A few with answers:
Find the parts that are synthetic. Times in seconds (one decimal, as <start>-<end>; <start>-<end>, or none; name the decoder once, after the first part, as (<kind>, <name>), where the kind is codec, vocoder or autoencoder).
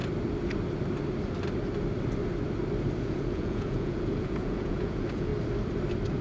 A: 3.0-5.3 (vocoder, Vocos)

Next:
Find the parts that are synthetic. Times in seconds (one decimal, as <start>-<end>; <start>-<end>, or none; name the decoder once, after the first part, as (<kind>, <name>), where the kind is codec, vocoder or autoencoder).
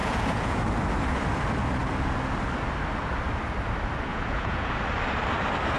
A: 0.0-0.6 (vocoder, Vocos); 4.1-4.7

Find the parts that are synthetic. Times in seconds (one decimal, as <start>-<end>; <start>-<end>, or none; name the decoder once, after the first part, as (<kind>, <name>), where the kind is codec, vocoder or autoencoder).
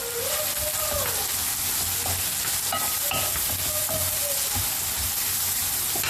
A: none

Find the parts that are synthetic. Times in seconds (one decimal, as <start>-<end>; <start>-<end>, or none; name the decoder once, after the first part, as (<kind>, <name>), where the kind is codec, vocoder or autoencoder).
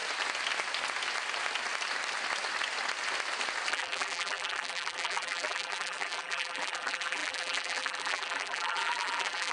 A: 3.7-9.5 (vocoder, BigVGAN v2)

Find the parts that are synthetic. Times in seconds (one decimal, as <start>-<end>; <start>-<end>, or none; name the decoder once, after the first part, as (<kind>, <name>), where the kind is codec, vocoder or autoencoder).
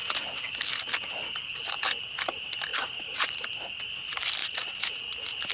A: 2.7-3.4 (vocoder, Vocos); 4.4-5.0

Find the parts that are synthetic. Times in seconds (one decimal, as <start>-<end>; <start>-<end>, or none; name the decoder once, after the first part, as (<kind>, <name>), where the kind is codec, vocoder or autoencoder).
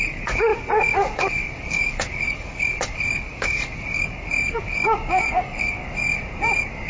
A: 0.0-6.9 (codec, DAC)